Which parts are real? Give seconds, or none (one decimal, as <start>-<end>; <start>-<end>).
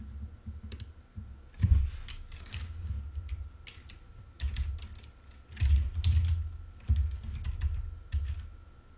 0.0-2.1; 2.9-9.0